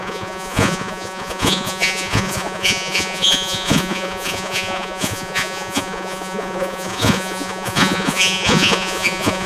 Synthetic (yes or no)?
yes